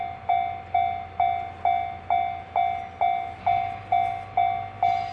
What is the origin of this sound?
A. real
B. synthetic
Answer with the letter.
A